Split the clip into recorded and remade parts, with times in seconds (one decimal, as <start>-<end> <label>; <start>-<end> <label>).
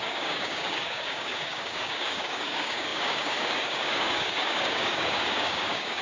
0.0-6.0 remade